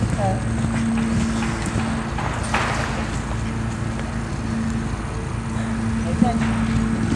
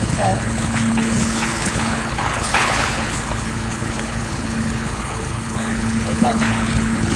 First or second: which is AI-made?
second